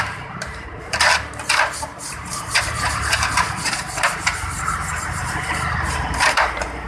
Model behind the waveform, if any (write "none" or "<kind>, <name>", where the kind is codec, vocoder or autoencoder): vocoder, BigVGAN v2